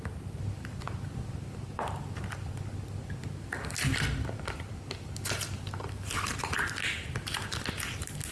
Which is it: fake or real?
real